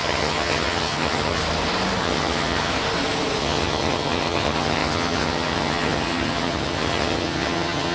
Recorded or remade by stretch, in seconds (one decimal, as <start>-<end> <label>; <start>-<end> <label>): 0.0-1.4 remade; 1.4-2.0 recorded; 2.0-2.7 remade; 2.7-3.4 recorded; 3.4-7.9 remade